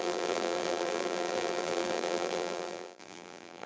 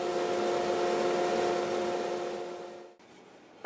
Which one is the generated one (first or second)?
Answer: first